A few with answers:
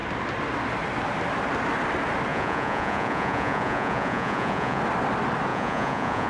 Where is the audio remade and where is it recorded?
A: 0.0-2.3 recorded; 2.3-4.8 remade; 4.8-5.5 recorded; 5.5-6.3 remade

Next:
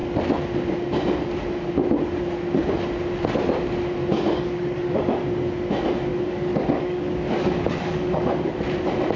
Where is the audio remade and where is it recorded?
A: 0.0-4.1 recorded; 4.1-4.9 remade; 4.9-6.1 recorded; 6.1-8.5 remade; 8.5-9.2 recorded

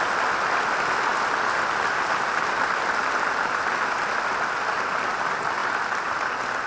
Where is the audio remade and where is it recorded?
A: 0.0-6.7 recorded

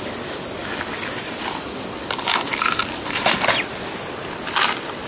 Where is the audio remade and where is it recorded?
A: 0.0-5.1 recorded

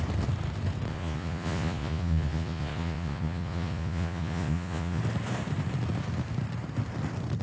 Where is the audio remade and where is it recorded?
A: 0.0-0.9 recorded; 0.9-5.0 remade; 5.0-7.4 recorded

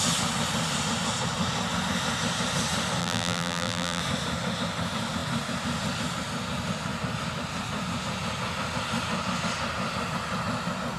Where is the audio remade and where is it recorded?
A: 0.0-3.0 recorded; 3.0-4.0 remade; 4.0-11.0 recorded

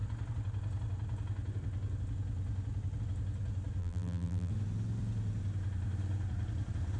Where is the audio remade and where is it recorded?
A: 0.0-3.8 recorded; 3.8-4.5 remade; 4.5-7.0 recorded